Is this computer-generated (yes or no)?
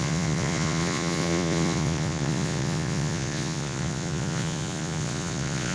yes